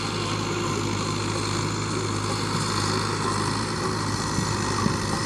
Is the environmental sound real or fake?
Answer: real